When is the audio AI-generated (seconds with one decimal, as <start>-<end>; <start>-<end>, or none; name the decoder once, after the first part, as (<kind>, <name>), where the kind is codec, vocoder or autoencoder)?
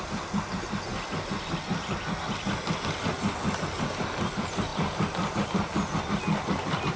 none